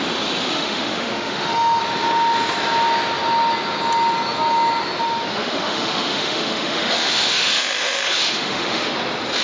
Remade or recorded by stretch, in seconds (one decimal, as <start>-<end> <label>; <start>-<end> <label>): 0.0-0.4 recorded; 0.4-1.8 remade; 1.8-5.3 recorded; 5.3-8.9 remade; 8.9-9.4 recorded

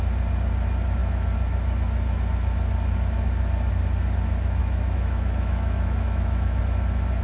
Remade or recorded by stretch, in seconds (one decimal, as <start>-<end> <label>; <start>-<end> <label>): 0.0-4.6 recorded; 4.6-6.6 remade; 6.6-7.2 recorded

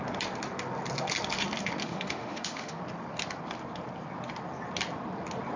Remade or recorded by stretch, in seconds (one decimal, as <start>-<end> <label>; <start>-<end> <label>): 0.0-1.8 recorded; 1.8-2.8 remade; 2.8-5.6 recorded

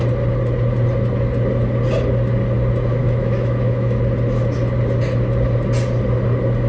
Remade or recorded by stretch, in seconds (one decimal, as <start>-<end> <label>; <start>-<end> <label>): 0.0-3.0 recorded; 3.0-4.0 remade; 4.0-6.7 recorded